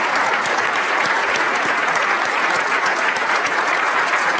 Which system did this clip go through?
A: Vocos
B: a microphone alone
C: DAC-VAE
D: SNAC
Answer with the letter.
A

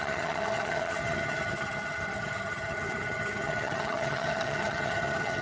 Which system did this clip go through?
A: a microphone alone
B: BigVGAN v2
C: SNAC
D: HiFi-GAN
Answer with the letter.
D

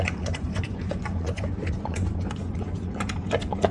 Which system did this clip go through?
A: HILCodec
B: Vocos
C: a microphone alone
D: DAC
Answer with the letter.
B